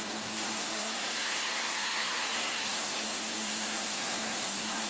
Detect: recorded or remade remade